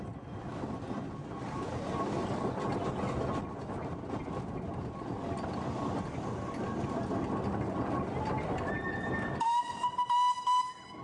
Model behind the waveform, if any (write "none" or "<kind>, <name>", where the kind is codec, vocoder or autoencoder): none